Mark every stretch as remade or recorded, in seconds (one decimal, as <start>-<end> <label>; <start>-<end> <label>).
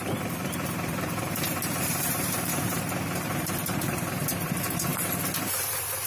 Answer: 0.0-4.9 remade; 4.9-5.4 recorded; 5.4-6.1 remade